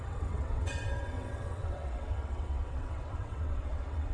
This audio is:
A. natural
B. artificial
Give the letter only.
B